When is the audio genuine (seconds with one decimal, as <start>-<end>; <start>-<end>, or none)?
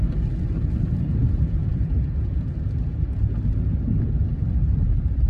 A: 0.0-1.2; 2.5-5.3